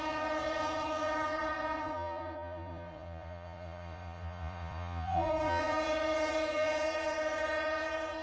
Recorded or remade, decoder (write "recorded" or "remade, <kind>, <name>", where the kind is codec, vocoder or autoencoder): remade, vocoder, Vocos